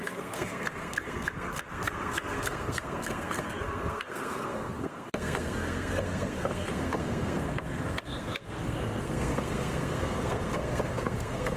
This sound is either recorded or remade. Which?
remade